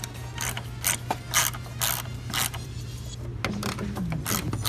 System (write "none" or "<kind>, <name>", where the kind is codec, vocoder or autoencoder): none